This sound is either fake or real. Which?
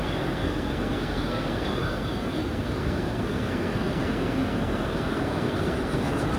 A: fake